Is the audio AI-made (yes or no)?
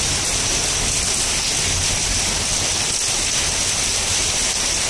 no